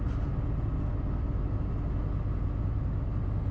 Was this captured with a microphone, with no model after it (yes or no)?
yes